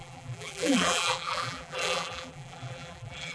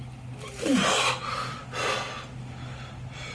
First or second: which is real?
second